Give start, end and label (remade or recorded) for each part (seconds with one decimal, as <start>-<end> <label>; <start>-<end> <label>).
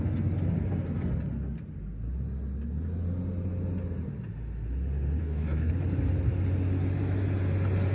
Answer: 0.0-5.2 recorded; 5.2-5.7 remade; 5.7-7.9 recorded